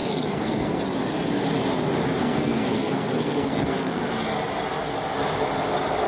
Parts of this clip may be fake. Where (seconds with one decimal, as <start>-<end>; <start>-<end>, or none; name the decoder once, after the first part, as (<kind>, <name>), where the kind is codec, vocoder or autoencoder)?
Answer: 0.0-0.8 (codec, SNAC); 2.2-4.0